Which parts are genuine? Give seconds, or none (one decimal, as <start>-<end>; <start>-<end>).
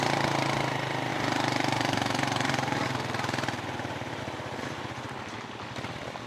0.0-1.1; 4.2-6.3